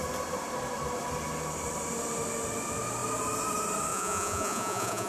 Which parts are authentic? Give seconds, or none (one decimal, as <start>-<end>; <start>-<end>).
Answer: 0.0-3.9